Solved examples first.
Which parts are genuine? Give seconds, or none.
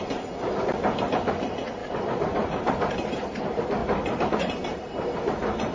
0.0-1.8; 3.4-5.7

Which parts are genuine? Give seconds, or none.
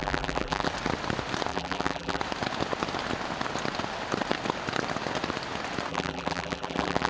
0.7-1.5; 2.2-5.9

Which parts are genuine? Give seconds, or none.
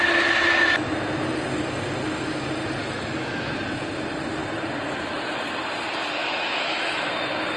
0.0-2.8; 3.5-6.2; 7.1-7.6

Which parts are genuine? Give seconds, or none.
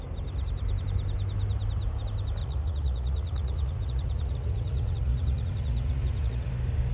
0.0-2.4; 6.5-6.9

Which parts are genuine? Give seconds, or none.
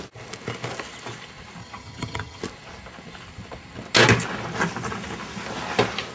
0.0-1.6; 2.4-6.1